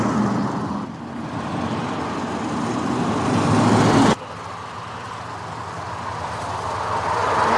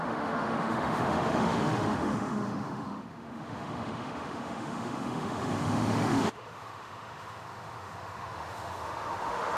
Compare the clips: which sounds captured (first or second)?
first